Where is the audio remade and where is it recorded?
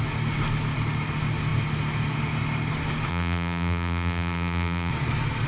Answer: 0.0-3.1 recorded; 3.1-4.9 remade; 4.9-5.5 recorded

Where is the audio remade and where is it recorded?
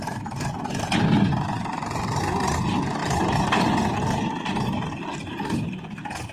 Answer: 0.0-3.0 recorded; 3.0-3.7 remade; 3.7-6.3 recorded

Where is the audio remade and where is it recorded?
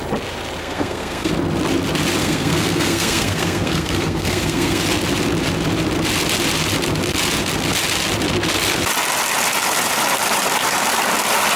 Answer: 0.0-0.6 recorded; 0.6-1.3 remade; 1.3-2.2 recorded; 2.2-4.8 remade; 4.8-11.6 recorded